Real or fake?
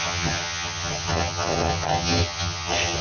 fake